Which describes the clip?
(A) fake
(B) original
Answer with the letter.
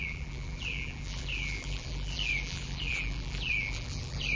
A